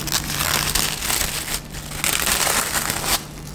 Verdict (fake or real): real